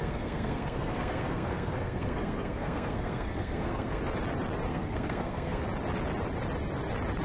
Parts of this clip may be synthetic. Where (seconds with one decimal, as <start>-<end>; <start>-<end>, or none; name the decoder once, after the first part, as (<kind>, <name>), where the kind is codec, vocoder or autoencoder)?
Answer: 0.0-4.0 (codec, SNAC); 4.7-5.6